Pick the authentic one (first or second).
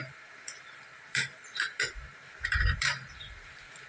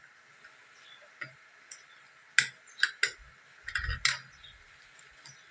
second